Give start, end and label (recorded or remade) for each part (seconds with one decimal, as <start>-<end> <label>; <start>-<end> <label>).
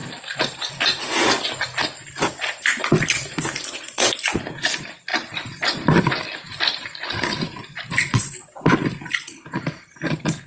0.0-5.1 recorded; 5.1-9.1 remade; 9.1-10.5 recorded